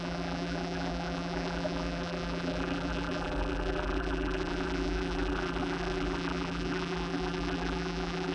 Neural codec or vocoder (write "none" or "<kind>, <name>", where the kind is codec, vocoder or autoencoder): vocoder, BigVGAN v2